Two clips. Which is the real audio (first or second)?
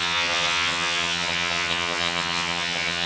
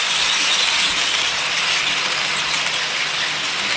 second